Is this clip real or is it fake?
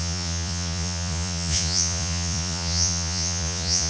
fake